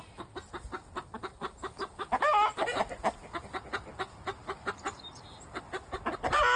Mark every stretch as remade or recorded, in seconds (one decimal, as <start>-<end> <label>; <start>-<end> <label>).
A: 0.0-6.6 recorded